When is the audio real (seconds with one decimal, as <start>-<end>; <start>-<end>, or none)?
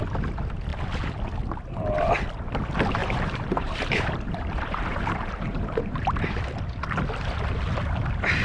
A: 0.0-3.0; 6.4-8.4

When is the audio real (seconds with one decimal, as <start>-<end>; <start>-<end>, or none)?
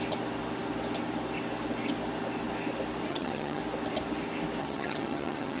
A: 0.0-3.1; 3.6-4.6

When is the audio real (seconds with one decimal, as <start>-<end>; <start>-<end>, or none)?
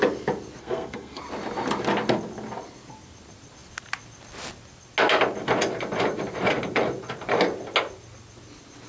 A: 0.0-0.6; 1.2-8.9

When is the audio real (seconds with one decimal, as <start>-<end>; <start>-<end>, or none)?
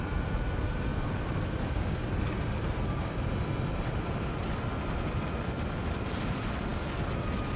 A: 0.9-4.4; 6.7-7.6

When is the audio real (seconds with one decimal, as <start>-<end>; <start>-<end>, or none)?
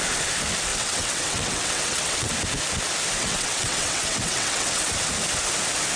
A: 0.0-0.7; 2.3-3.2; 4.9-6.0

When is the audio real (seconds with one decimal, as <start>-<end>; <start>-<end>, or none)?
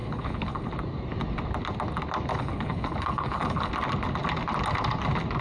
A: 0.7-2.3; 3.7-5.4